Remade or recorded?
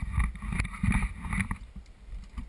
recorded